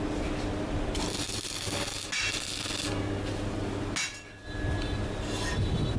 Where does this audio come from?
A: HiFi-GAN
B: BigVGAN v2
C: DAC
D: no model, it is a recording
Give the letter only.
D